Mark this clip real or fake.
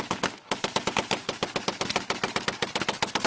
real